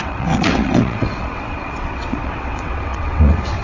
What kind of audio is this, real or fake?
fake